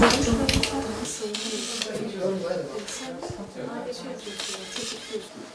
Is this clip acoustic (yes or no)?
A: yes